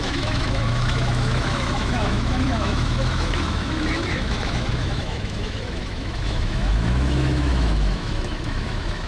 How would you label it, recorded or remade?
remade